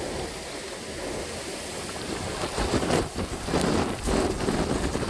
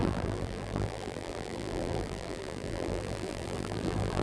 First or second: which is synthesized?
second